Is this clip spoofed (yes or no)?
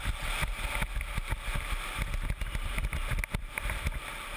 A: no